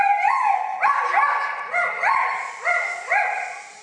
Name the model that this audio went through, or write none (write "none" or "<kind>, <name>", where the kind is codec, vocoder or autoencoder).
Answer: none